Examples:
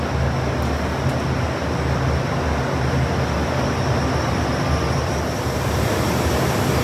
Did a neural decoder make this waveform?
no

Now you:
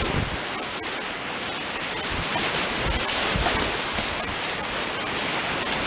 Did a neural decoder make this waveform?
no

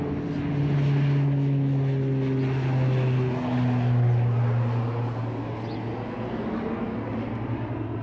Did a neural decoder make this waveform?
no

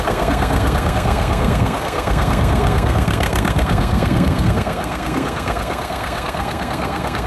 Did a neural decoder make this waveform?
yes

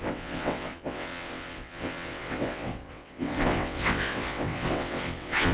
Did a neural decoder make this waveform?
yes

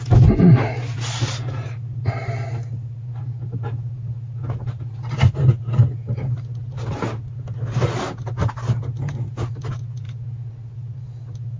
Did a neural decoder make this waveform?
no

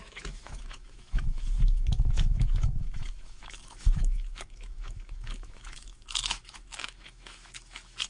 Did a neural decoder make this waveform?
yes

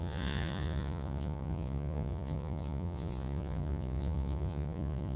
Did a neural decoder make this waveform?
yes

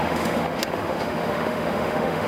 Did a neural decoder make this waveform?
yes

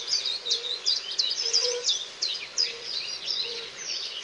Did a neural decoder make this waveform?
yes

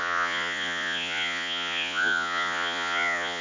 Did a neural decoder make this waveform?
yes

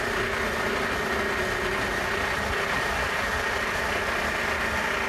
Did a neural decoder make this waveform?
no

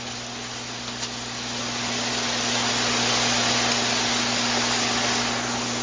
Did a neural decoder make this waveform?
no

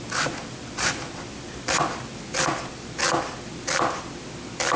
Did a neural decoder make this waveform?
yes